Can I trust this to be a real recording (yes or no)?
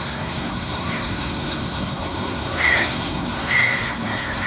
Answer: no